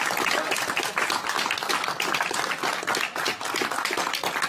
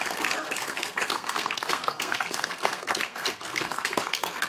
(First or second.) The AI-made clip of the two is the second